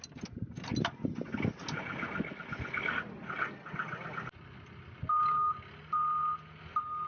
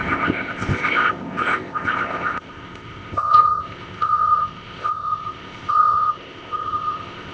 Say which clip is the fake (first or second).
second